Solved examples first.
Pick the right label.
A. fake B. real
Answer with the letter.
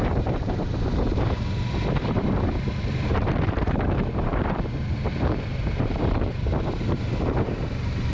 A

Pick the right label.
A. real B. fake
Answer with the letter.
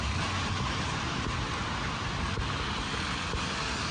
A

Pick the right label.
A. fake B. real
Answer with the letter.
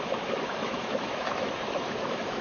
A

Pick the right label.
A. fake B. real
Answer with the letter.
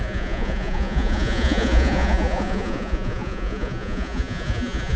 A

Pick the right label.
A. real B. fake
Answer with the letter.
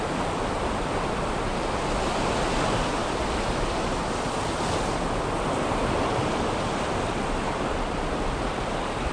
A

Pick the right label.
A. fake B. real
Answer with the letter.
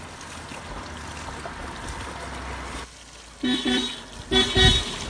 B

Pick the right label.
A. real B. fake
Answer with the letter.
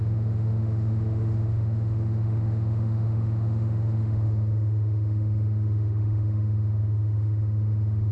B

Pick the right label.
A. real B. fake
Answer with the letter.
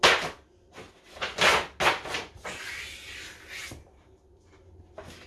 A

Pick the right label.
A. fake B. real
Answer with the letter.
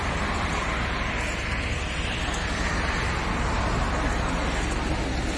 B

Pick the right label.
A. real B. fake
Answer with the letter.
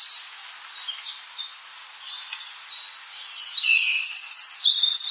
A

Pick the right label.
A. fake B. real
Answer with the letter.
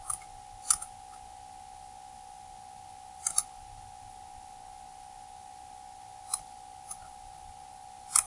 B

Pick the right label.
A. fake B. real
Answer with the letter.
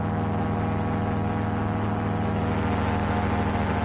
B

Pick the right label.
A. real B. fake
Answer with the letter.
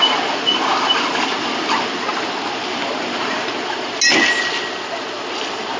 A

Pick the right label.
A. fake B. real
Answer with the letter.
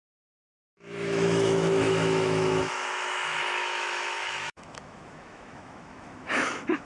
A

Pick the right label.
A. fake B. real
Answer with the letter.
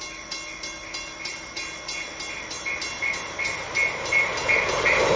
B